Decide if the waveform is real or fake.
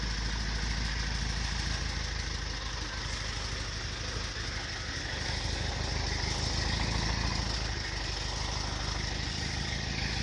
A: real